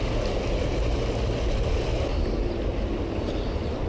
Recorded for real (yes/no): yes